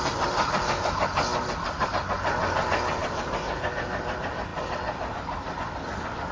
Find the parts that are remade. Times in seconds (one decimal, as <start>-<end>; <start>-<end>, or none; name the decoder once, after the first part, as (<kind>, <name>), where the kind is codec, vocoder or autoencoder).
none